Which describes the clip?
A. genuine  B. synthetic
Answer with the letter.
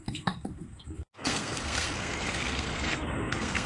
B